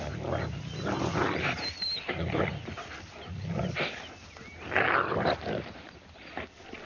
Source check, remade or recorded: recorded